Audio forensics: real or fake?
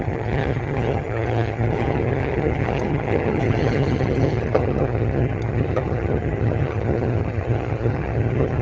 fake